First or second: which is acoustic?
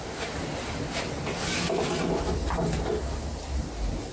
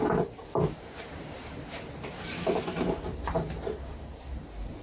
first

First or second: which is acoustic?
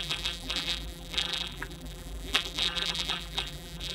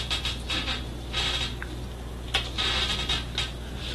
second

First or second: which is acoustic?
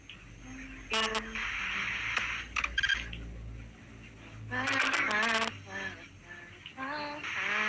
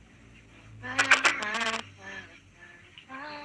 first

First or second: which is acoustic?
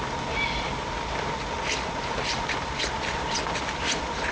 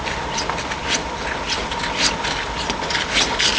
second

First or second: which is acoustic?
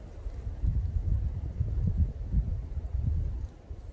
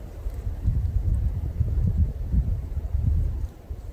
first